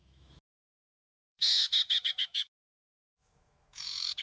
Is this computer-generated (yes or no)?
yes